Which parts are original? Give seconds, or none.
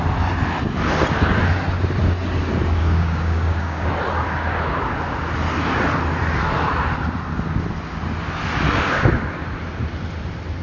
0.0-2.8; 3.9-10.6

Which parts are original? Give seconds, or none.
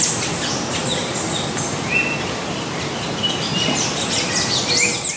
0.0-5.2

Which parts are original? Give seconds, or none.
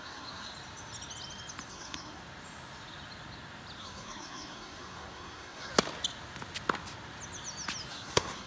0.5-1.7; 2.2-3.8; 5.7-7.9